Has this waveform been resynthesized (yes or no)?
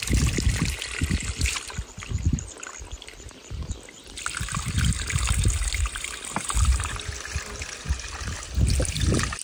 no